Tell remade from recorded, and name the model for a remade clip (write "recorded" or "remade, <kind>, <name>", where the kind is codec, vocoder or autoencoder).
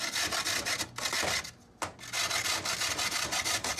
recorded